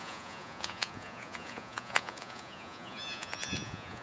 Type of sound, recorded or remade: remade